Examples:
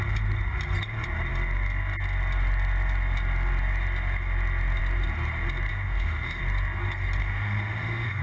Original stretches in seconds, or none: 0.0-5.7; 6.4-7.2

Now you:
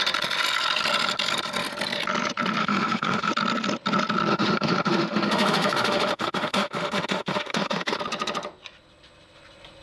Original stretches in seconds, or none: 0.0-2.6; 3.3-4.3; 8.0-9.8